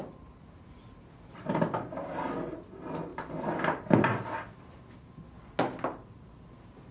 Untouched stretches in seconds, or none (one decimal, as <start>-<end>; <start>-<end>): 0.0-6.9